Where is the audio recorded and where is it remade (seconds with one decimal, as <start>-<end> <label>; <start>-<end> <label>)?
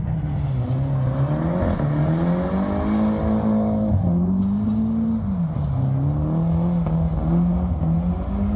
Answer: 0.0-8.6 recorded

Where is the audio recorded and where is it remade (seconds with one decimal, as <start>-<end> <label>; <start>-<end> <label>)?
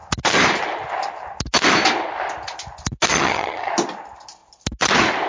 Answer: 0.0-3.1 recorded; 3.1-3.7 remade; 3.7-5.3 recorded